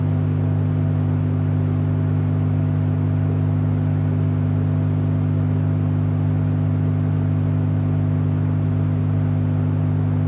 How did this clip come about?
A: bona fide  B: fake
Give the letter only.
A